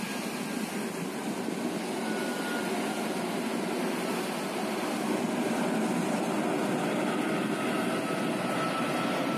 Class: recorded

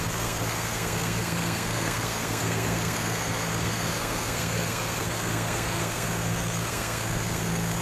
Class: remade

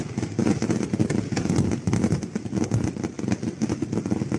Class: recorded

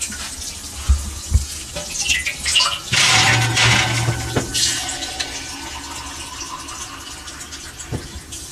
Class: recorded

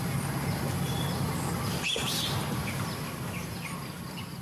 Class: recorded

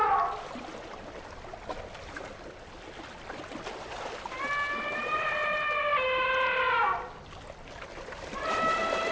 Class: recorded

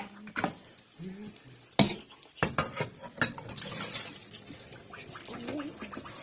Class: recorded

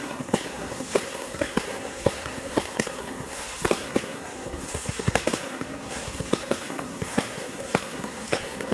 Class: remade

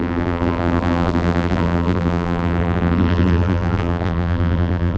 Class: remade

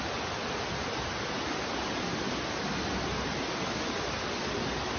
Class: recorded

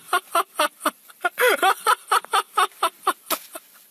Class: recorded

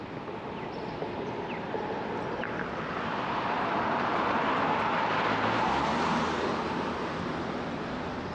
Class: recorded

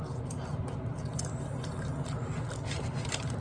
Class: recorded